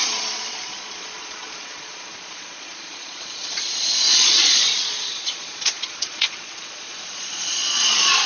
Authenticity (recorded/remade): remade